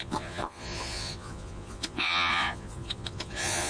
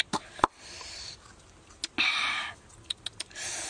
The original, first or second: second